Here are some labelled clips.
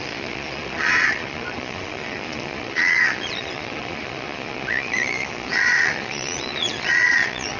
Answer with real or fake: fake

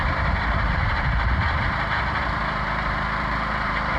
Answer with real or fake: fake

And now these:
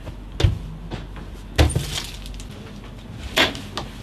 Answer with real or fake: real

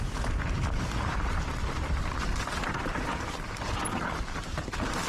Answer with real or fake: fake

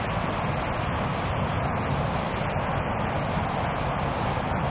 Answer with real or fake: real